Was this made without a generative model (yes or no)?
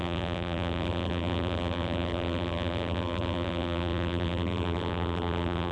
no